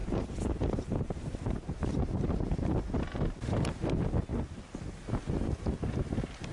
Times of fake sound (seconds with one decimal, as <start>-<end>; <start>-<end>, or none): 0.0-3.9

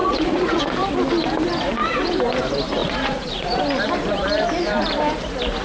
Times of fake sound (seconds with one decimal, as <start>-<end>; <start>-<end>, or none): 0.0-0.6; 2.8-3.6

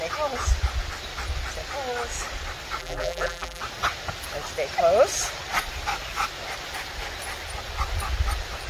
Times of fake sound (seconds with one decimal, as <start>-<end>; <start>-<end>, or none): 2.8-3.6

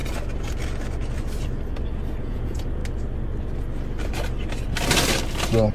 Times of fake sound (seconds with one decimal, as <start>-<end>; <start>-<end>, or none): 2.2-2.8

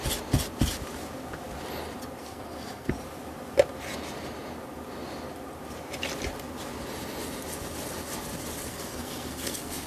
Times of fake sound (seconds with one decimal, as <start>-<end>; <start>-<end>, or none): 2.2-2.9; 8.7-9.9

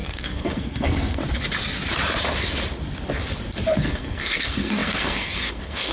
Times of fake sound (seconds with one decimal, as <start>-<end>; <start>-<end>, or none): 0.0-1.2; 3.8-5.9

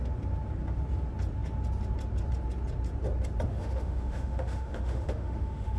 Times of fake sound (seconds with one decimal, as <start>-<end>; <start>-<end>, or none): 3.5-5.8

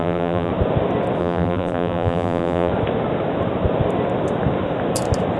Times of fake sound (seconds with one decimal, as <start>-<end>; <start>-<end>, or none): 0.0-0.5; 1.2-2.7